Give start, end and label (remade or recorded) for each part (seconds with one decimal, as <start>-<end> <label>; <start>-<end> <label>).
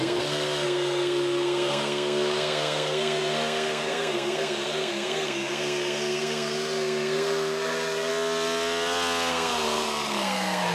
0.0-8.1 remade; 8.1-9.3 recorded; 9.3-10.7 remade